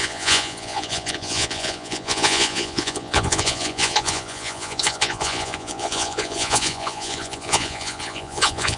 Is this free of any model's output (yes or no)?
no